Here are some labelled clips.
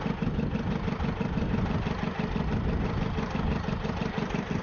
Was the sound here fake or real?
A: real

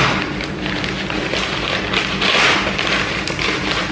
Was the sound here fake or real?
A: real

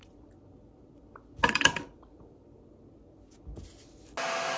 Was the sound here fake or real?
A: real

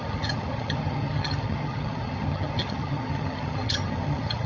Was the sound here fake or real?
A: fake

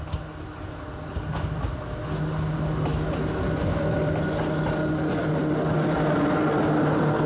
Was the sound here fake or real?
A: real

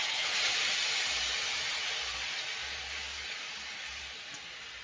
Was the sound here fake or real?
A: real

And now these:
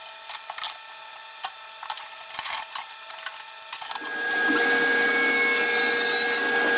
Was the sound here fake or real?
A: real